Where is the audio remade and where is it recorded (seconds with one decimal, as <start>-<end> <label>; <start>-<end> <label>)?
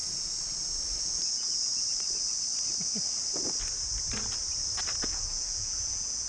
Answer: 0.0-1.0 recorded; 1.0-1.7 remade; 1.7-5.0 recorded; 5.0-6.3 remade